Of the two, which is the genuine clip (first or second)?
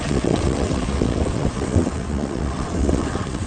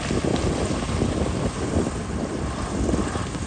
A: second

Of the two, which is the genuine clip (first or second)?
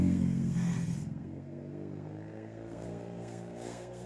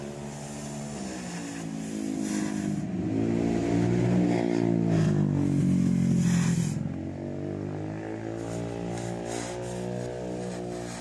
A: second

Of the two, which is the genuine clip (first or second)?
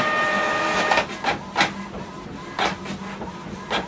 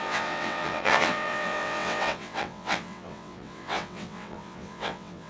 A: first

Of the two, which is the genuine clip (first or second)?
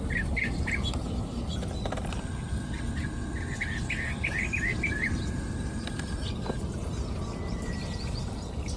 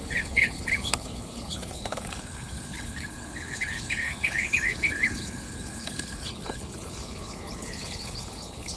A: first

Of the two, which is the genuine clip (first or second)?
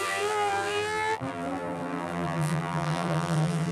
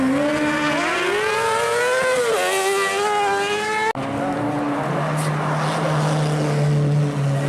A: second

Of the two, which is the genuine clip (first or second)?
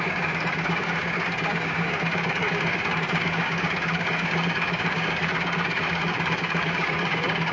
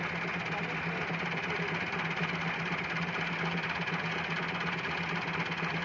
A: second